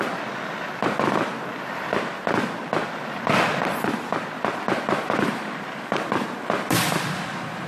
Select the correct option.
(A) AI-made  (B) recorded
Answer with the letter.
B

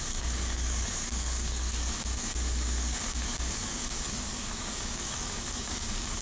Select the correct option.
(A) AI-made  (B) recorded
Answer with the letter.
A